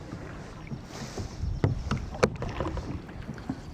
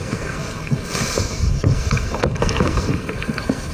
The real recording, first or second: first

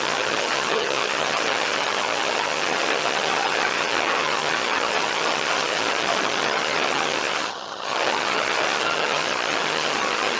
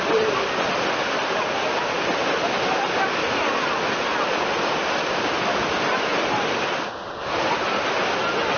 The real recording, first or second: second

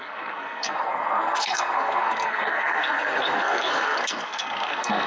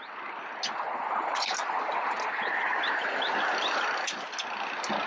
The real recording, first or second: second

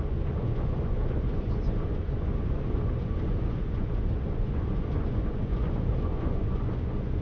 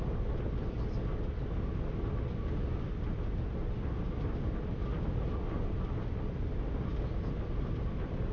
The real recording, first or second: second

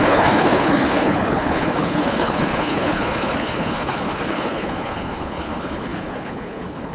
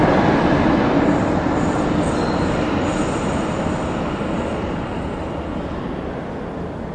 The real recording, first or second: second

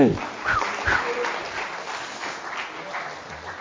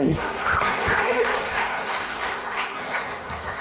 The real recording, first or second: first